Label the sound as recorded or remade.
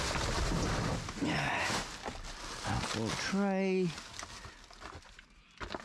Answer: recorded